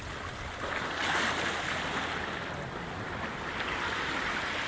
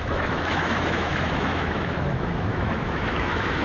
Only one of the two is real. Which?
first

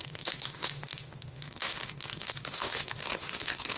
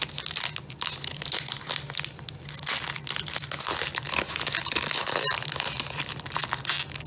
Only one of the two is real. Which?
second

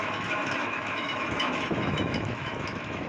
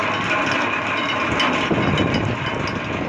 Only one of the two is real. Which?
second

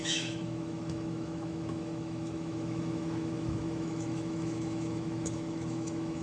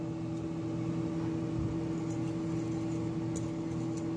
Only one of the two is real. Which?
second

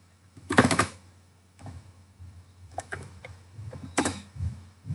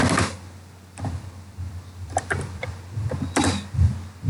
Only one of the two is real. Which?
second